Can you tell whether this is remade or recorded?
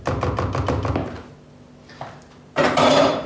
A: recorded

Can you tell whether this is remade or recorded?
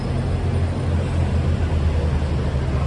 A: recorded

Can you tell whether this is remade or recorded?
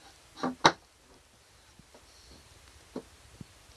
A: recorded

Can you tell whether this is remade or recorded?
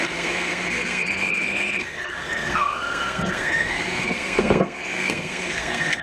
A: remade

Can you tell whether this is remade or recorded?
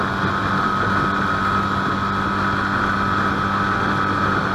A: recorded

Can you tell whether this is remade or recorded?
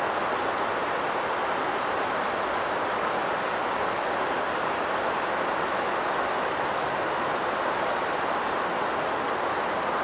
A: recorded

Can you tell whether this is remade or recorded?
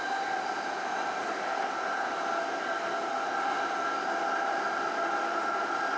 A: recorded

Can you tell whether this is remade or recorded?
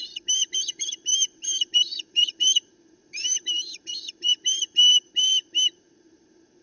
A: remade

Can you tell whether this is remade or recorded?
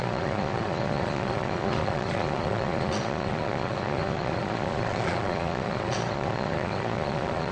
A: remade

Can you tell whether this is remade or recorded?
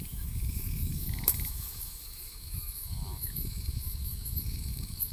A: remade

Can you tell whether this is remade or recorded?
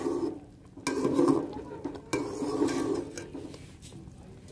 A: recorded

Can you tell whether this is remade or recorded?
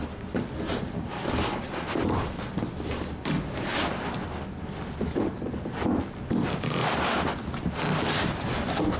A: recorded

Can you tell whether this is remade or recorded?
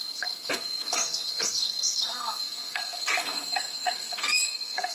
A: remade